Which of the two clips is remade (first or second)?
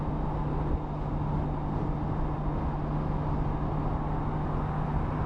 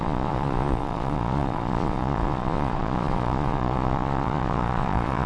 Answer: second